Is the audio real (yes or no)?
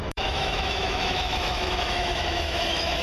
no